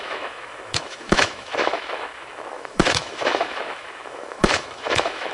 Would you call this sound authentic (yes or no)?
no